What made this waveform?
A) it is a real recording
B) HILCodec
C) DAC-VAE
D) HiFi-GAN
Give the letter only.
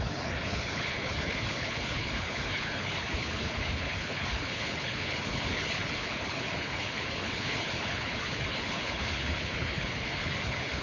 B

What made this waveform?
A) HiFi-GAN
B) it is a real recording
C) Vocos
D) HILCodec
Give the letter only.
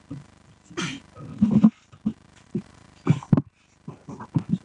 B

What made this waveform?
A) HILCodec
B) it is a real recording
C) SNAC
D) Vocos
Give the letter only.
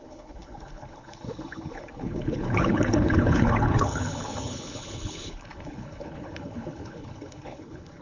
A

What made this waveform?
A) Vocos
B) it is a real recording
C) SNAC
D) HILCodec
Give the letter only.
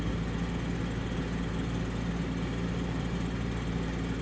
B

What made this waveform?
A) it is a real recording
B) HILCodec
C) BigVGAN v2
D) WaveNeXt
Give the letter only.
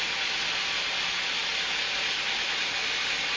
A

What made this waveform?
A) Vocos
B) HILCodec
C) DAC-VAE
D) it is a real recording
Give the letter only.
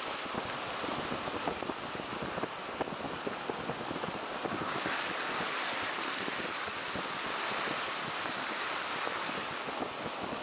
D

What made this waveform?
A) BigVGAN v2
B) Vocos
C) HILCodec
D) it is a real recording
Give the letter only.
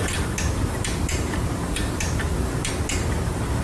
D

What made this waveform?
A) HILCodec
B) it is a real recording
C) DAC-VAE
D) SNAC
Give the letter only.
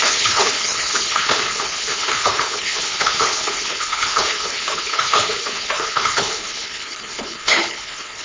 A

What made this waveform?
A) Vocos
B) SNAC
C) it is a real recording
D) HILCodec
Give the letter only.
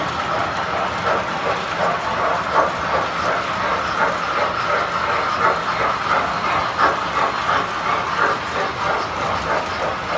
C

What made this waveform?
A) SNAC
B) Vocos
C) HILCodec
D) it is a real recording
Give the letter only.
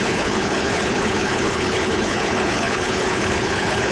C